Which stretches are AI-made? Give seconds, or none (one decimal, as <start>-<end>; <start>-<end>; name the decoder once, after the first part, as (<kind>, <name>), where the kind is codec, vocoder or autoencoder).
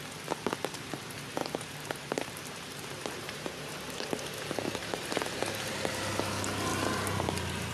1.4-3.7 (vocoder, BigVGAN v2); 6.7-7.3